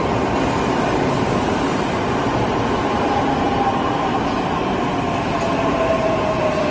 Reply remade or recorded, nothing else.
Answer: recorded